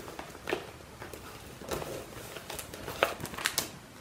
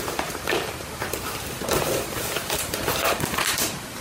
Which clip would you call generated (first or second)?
second